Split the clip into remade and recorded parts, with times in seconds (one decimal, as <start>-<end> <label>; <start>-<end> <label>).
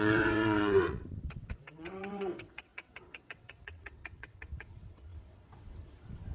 0.0-6.3 remade